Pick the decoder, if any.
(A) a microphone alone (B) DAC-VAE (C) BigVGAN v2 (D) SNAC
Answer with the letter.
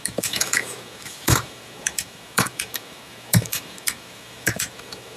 B